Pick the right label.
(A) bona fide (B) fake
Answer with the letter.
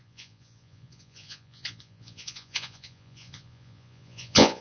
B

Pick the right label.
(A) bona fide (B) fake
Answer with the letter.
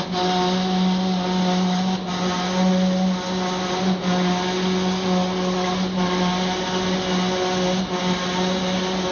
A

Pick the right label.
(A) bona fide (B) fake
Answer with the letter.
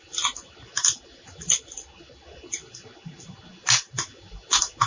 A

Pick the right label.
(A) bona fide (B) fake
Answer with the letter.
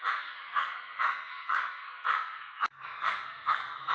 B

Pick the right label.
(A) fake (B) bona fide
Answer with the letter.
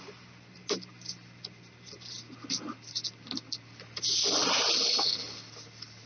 B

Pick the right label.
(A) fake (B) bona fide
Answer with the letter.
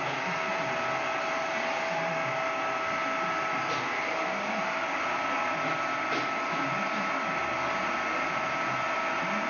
B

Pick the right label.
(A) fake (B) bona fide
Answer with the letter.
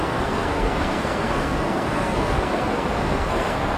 A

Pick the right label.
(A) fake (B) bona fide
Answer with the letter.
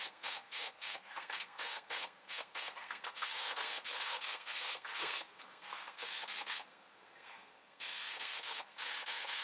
A